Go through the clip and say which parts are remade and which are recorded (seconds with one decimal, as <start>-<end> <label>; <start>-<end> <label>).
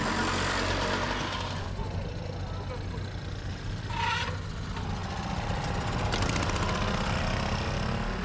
0.0-8.2 recorded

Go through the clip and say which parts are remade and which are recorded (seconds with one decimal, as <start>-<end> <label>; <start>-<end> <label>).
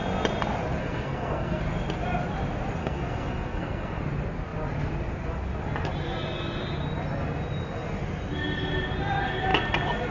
0.0-0.8 recorded; 0.8-1.6 remade; 1.6-2.8 recorded; 2.8-4.0 remade; 4.0-10.1 recorded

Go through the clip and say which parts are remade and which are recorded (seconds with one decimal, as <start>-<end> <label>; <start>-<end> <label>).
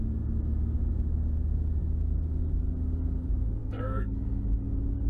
0.0-3.6 recorded; 3.6-4.2 remade; 4.2-5.1 recorded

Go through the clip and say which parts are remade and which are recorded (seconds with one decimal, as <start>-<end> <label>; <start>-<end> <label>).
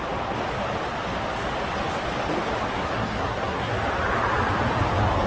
0.0-2.7 recorded; 2.7-3.7 remade; 3.7-5.3 recorded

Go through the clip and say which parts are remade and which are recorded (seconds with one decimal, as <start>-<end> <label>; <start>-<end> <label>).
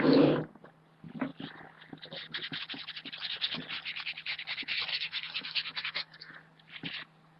0.0-4.9 recorded; 4.9-6.3 remade; 6.3-7.4 recorded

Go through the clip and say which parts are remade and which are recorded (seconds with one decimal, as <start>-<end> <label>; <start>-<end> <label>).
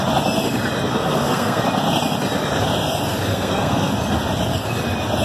0.0-0.9 recorded; 0.9-1.6 remade; 1.6-3.3 recorded; 3.3-3.9 remade; 3.9-5.2 recorded